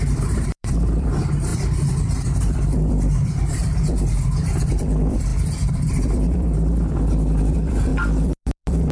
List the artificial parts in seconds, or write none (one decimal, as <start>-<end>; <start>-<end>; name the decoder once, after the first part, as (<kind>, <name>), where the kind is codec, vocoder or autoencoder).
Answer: 0.0-8.9 (vocoder, BigVGAN v2)